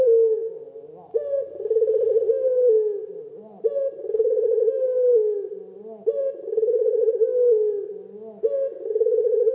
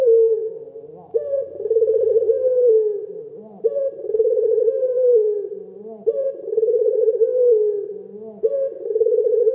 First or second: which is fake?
second